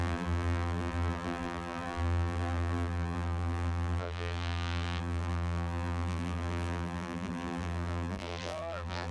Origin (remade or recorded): remade